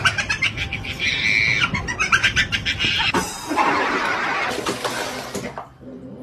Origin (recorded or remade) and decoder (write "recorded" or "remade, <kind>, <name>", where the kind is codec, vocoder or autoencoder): recorded